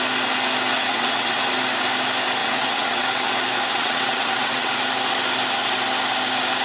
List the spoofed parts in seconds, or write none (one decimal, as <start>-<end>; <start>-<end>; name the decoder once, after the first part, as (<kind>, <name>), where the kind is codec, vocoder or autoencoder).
0.7-1.4 (vocoder, WaveNeXt); 2.4-3.3; 3.7-4.7